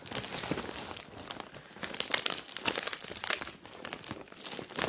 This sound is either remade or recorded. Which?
recorded